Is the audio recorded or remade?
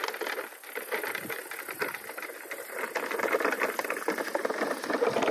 recorded